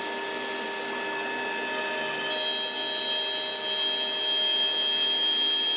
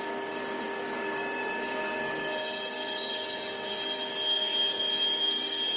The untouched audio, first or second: first